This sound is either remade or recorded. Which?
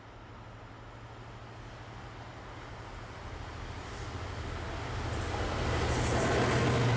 recorded